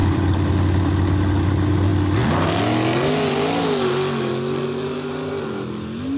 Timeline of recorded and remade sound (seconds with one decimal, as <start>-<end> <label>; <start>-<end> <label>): 0.0-6.2 recorded